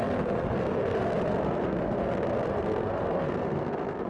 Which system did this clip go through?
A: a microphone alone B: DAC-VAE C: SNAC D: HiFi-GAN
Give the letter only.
C